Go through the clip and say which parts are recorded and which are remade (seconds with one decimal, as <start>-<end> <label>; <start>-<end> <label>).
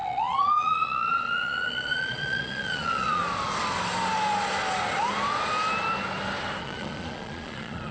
0.0-3.2 remade; 3.2-6.6 recorded; 6.6-7.9 remade